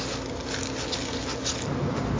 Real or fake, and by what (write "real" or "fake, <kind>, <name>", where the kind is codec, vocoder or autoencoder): real